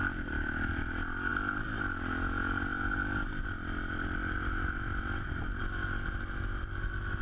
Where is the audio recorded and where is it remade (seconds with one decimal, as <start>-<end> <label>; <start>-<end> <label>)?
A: 0.0-7.2 recorded